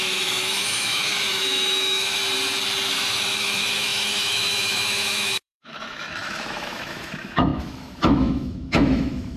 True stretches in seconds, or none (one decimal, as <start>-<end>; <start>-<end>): 2.2-2.9